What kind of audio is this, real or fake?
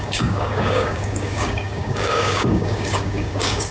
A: fake